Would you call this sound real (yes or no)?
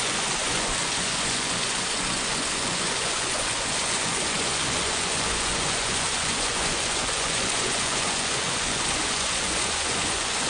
no